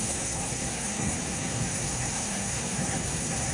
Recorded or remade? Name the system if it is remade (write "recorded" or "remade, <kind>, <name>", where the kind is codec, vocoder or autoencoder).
remade, codec, SNAC